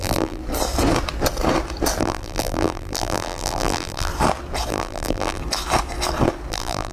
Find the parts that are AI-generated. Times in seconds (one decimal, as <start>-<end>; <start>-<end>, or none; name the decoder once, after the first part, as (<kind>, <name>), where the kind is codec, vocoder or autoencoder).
0.0-0.4 (vocoder, BigVGAN v2); 2.0-4.1; 4.7-5.4; 6.5-6.9